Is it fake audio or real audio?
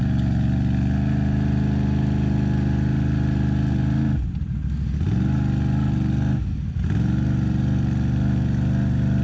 real